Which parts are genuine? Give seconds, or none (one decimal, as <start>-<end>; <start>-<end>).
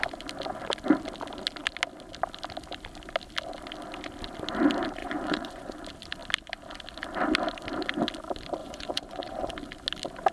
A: 0.0-5.0; 5.7-8.6; 9.5-10.3